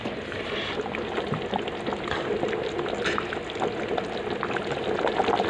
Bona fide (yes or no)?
yes